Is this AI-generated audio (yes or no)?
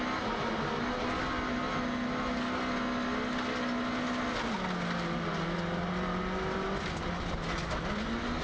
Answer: no